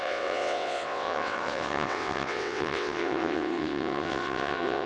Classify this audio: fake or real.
fake